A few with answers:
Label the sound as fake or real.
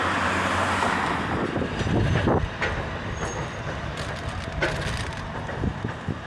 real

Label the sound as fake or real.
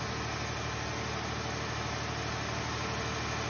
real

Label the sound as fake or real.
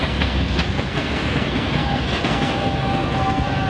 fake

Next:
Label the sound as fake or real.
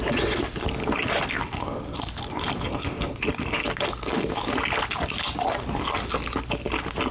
real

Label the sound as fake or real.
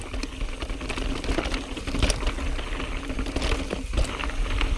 real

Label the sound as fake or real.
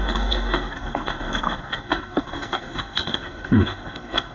fake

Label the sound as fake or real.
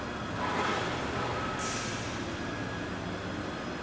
real